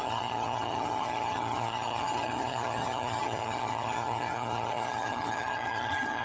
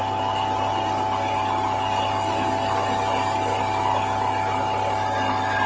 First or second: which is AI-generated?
first